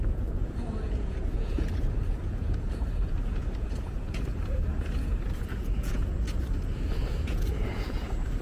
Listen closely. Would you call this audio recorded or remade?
remade